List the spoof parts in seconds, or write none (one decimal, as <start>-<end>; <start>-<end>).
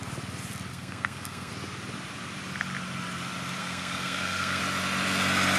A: 0.7-1.5; 3.6-4.6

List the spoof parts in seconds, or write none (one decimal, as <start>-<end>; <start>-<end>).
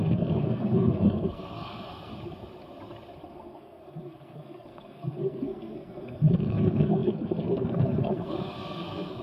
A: 0.0-2.1; 3.3-9.2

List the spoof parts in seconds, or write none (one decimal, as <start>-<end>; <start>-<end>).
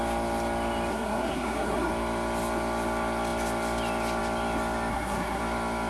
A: 0.9-1.9; 4.9-5.4